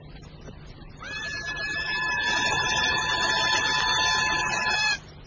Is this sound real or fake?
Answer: real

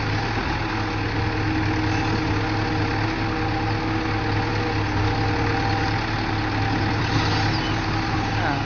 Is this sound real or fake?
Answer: real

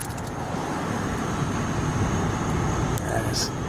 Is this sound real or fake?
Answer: real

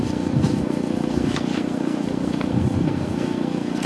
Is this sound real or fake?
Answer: fake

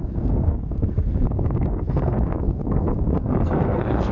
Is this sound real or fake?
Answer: fake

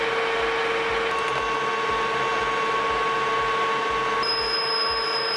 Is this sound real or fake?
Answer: real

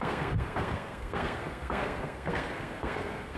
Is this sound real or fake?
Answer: fake